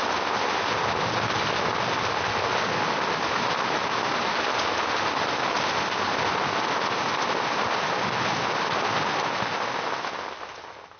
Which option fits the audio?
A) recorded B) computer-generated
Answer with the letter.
A